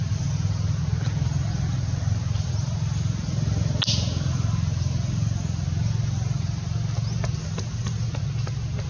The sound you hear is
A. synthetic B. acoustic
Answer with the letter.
B